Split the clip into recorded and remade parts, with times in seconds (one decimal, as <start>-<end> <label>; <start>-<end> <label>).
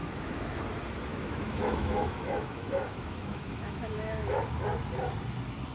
0.0-0.6 remade; 0.6-1.1 recorded; 1.1-4.5 remade; 4.5-5.7 recorded